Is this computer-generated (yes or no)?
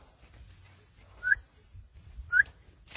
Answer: no